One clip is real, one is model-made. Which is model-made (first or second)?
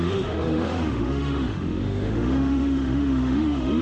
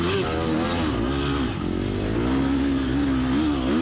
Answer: first